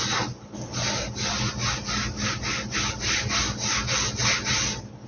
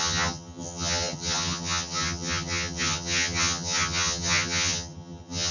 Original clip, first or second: first